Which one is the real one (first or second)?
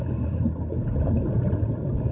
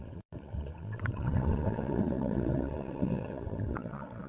first